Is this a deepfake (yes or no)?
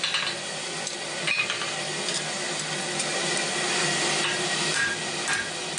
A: no